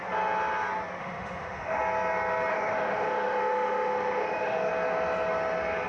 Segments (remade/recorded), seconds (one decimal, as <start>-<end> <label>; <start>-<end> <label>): 0.0-1.0 recorded; 1.0-1.8 remade; 1.8-2.5 recorded; 2.5-4.7 remade; 4.7-5.9 recorded